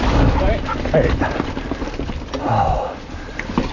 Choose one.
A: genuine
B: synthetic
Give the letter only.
A